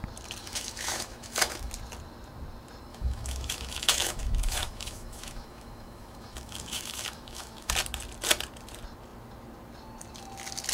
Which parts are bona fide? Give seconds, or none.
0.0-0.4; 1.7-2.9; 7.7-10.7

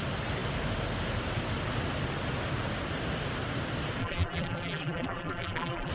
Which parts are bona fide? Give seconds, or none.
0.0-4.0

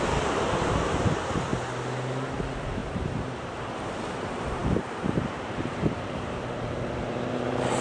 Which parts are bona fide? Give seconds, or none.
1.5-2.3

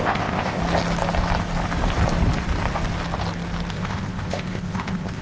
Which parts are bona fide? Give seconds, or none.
0.6-3.7

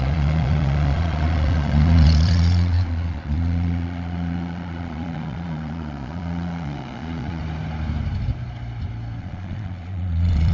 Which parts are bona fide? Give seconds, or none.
7.4-9.2